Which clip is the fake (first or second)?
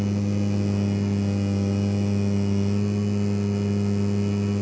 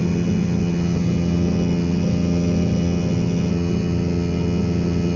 second